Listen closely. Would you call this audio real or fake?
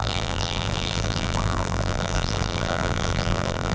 fake